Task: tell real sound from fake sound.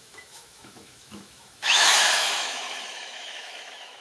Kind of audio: fake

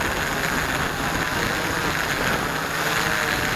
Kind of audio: real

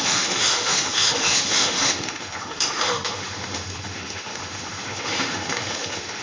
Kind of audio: fake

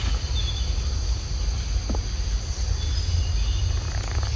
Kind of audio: real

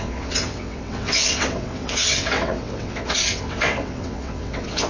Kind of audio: fake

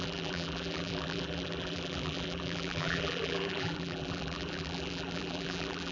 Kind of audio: fake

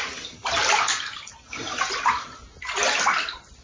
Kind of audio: real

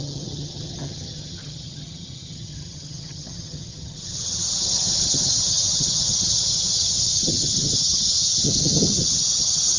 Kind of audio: fake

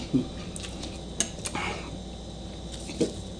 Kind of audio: real